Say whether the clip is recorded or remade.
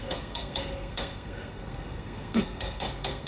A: remade